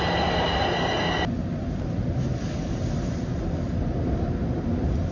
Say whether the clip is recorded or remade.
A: recorded